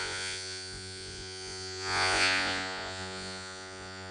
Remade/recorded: remade